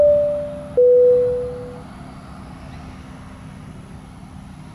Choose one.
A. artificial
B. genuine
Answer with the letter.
B